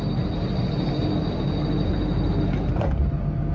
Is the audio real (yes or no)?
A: yes